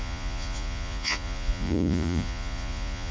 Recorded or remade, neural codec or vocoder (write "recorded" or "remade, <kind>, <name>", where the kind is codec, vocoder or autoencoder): remade, vocoder, Vocos